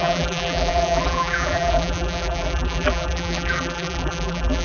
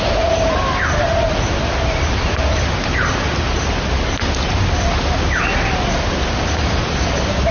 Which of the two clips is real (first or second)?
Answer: second